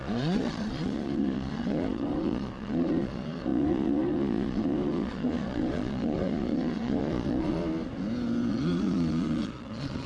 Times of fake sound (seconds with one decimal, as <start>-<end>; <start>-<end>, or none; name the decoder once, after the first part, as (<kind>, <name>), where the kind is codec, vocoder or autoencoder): 0.0-7.6 (vocoder, Vocos); 8.5-10.1